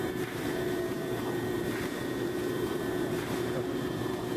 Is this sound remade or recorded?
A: remade